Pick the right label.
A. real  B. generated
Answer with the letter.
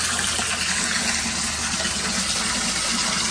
A